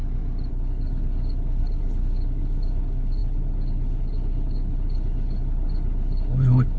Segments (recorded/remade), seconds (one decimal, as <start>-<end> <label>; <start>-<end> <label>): 0.0-0.5 recorded; 0.5-6.8 remade